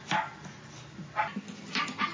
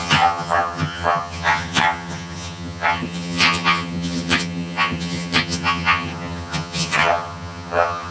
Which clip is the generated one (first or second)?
second